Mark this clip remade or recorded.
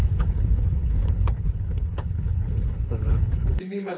remade